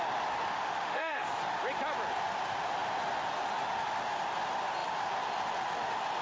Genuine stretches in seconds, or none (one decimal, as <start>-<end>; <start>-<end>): 0.0-0.5; 1.3-6.2